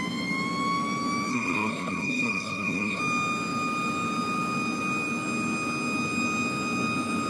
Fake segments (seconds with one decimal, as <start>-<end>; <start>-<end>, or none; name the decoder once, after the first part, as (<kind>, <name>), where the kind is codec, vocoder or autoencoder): 1.3-3.0 (codec, SNAC)